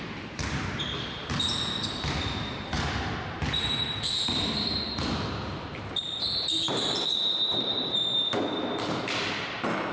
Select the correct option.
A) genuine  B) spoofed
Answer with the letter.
B